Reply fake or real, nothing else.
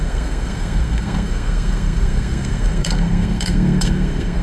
fake